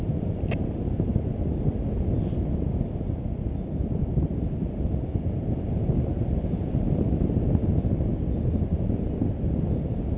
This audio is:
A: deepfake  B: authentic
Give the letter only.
B